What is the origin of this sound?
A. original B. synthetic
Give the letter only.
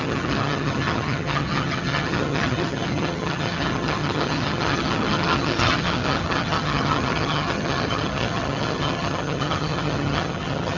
B